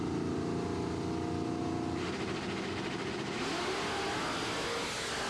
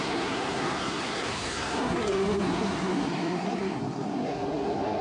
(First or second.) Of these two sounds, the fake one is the second